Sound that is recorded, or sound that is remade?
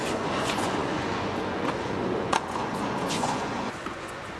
remade